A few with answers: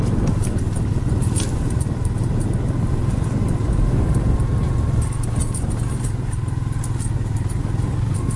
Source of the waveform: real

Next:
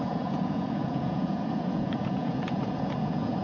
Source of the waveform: fake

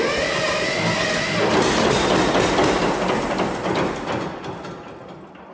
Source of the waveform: real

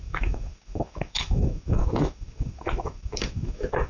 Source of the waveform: fake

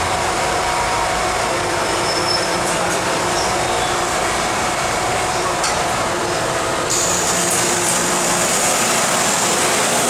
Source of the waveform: fake